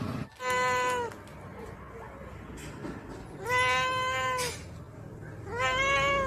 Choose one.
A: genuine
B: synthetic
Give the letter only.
A